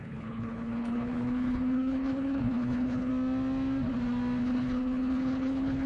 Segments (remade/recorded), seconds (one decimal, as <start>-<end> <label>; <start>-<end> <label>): 0.0-3.1 remade; 3.1-4.4 recorded; 4.4-5.9 remade